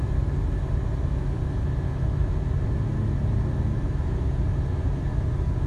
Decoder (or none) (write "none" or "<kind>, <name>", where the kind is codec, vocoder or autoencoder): none